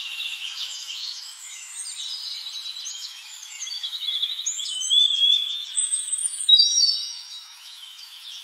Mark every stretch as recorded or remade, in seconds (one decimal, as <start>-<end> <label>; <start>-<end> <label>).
0.0-1.7 remade; 1.7-2.9 recorded; 2.9-8.4 remade